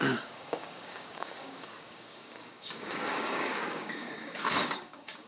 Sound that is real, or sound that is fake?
fake